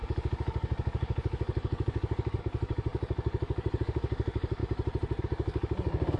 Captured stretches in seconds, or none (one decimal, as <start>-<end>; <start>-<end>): 4.6-5.2